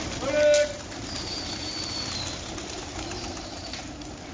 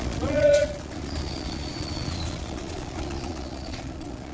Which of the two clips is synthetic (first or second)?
second